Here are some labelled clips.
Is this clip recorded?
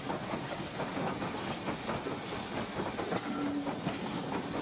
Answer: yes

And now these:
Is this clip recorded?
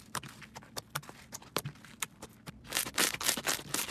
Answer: yes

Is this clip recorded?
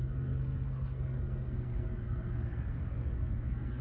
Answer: no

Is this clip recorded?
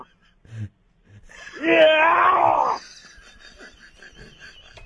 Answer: yes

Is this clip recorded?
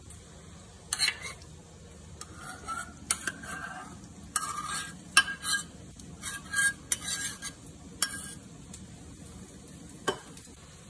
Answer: yes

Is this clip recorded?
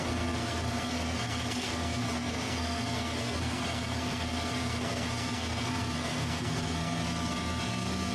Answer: no